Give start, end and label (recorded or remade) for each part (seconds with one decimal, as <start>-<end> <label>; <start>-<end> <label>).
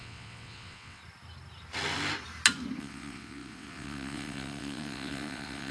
0.0-1.0 remade; 1.0-2.8 recorded; 2.8-5.7 remade